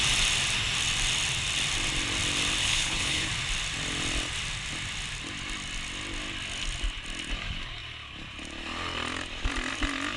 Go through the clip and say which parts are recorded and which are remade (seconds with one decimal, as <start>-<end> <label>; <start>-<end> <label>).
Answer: 0.0-2.6 recorded; 2.6-3.3 remade; 3.3-10.2 recorded